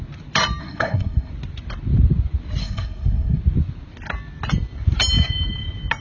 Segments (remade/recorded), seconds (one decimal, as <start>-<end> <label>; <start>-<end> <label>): 0.0-0.6 recorded; 0.6-1.3 remade; 1.3-2.6 recorded; 2.6-3.4 remade; 3.4-6.0 recorded